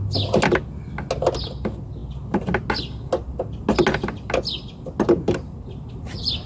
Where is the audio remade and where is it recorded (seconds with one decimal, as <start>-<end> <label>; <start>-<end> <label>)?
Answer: 0.0-6.5 recorded